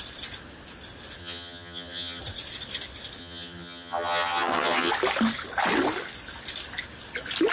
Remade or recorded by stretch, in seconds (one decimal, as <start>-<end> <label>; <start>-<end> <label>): 0.0-1.2 recorded; 1.2-2.2 remade; 2.2-3.2 recorded; 3.2-4.9 remade; 4.9-7.5 recorded